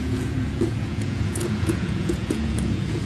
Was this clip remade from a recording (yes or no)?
yes